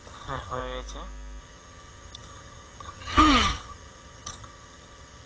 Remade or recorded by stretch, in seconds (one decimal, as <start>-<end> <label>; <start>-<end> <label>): 0.0-0.6 remade; 0.6-1.4 recorded; 1.4-5.3 remade